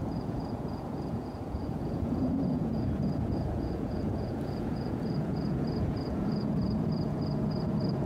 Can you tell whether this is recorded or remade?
remade